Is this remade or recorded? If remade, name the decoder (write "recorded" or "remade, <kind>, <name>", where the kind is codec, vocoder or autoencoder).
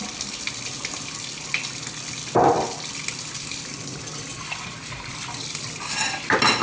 recorded